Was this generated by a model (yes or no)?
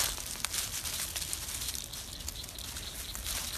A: no